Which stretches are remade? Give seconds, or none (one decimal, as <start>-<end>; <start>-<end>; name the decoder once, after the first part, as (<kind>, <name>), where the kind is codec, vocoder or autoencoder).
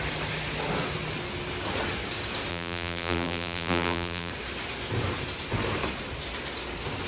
2.5-4.3 (vocoder, BigVGAN v2)